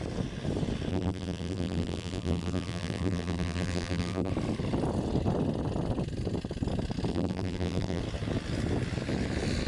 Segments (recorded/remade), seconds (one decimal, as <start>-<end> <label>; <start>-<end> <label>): 0.0-0.9 recorded; 0.9-4.3 remade; 4.3-7.1 recorded; 7.1-8.0 remade; 8.0-9.7 recorded